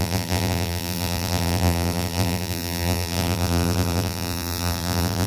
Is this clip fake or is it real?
fake